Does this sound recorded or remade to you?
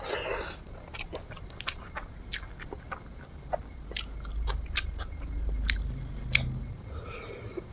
recorded